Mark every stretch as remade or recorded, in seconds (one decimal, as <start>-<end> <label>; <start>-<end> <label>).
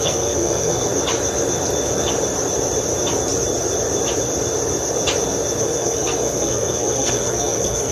0.0-0.9 remade; 0.9-5.6 recorded; 5.6-7.9 remade